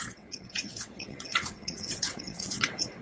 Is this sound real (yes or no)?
no